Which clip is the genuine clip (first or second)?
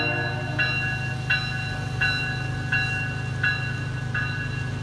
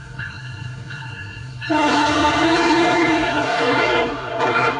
first